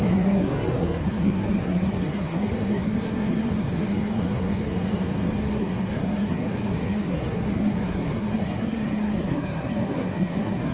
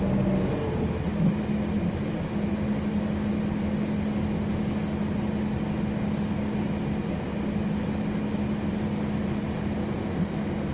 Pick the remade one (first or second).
first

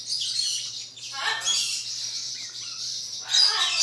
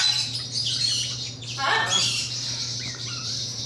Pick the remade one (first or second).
second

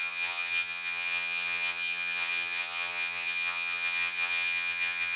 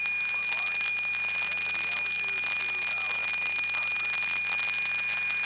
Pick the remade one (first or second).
first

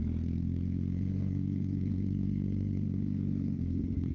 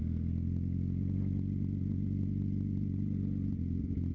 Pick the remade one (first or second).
first